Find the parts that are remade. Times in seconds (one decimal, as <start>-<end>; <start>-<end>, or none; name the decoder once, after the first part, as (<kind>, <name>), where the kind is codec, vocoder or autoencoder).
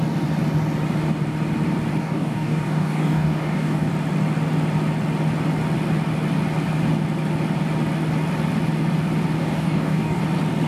2.0-3.9 (codec, DAC); 9.4-10.2